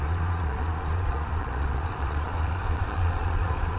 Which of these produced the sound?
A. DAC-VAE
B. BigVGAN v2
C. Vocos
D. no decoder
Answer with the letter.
C